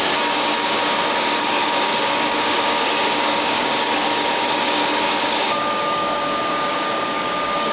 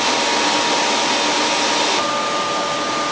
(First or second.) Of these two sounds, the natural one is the second